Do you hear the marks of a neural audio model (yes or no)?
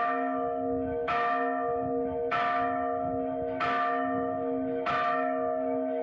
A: yes